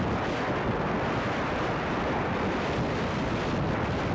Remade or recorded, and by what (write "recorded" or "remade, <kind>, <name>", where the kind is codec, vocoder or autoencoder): recorded